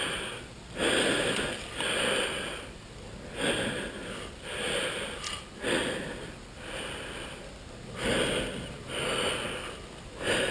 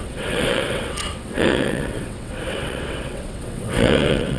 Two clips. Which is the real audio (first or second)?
first